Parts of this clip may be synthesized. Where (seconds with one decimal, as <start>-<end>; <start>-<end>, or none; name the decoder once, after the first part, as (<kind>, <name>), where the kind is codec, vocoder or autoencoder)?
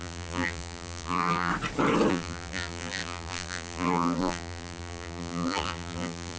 0.0-1.5 (vocoder, BigVGAN v2); 2.1-6.4